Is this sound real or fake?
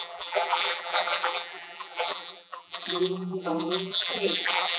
fake